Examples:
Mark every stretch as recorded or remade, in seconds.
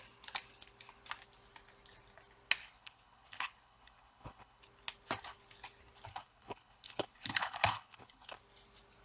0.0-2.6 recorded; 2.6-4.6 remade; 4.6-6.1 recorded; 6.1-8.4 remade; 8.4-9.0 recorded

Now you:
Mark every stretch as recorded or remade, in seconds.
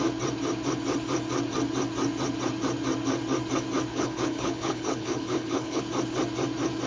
0.0-3.9 recorded; 3.9-5.8 remade; 5.8-6.9 recorded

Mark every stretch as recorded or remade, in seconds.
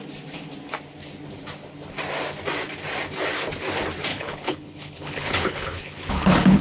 0.0-4.1 recorded; 4.1-6.6 remade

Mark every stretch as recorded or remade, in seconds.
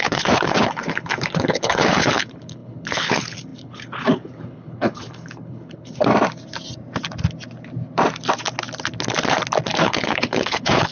0.0-6.1 remade; 6.1-9.8 recorded; 9.8-10.9 remade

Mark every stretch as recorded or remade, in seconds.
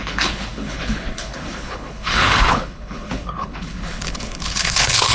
0.0-5.1 remade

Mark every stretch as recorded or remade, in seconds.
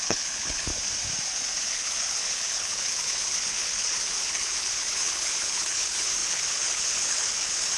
0.0-0.7 remade; 0.7-1.6 recorded; 1.6-7.8 remade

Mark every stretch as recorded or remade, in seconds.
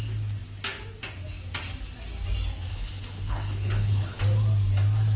0.0-2.7 recorded; 2.7-4.2 remade; 4.2-5.2 recorded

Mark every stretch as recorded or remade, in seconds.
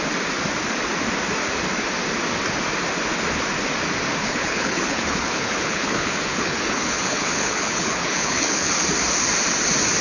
0.0-4.2 recorded; 4.2-8.7 remade; 8.7-10.0 recorded